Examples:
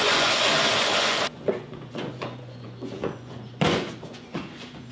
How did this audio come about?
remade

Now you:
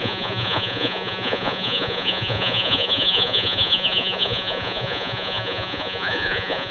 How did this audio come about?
remade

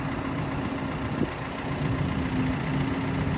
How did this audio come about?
recorded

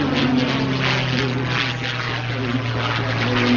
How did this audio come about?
recorded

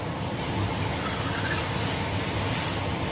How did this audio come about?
recorded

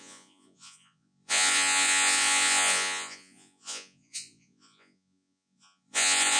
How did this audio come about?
remade